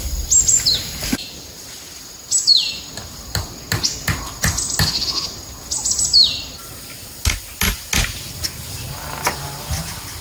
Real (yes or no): yes